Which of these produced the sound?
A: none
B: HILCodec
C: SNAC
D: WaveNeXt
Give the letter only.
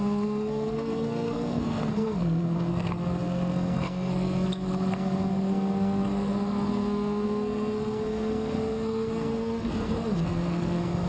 C